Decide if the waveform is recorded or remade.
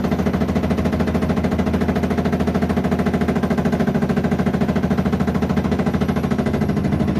recorded